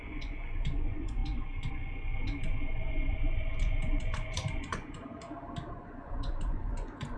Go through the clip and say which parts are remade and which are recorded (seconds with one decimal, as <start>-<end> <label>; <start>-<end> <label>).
0.0-5.1 remade; 5.1-5.7 recorded; 5.7-7.2 remade